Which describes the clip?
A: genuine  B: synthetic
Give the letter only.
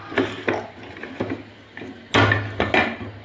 A